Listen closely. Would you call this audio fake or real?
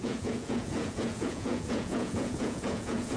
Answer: fake